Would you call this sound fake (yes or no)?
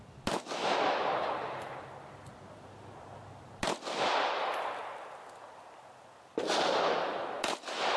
no